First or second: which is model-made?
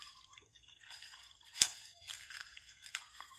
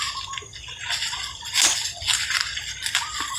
first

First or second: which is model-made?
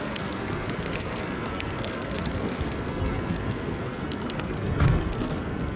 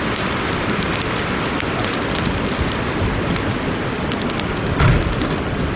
first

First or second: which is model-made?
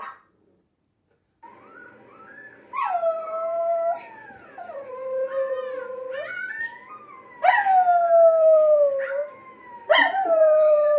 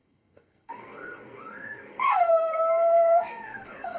second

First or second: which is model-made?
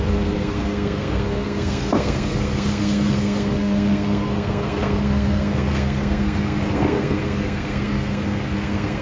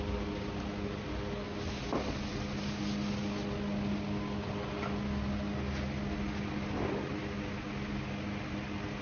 first